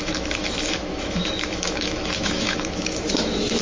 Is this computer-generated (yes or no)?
yes